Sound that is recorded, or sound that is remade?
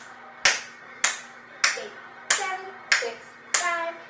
recorded